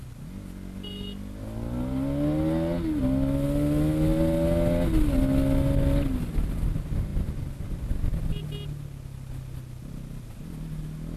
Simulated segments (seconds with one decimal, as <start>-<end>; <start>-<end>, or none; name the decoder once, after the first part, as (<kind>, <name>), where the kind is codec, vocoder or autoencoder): none